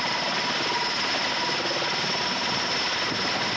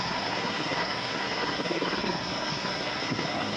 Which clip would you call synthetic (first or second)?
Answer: second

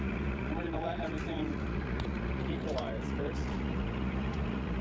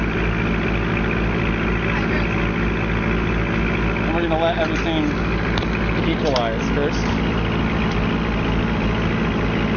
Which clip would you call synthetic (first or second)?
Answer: first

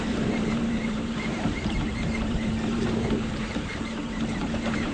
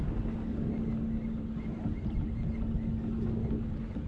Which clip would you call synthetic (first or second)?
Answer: first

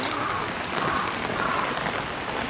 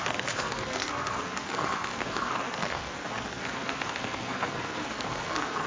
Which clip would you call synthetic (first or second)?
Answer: second